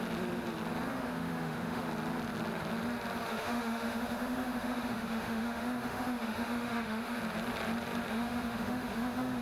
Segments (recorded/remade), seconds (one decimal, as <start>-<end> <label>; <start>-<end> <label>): 0.0-0.9 recorded; 0.9-1.8 remade; 1.8-3.3 recorded; 3.3-7.2 remade; 7.2-8.1 recorded; 8.1-9.4 remade